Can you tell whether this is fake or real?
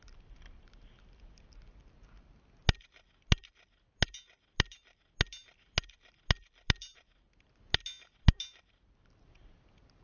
real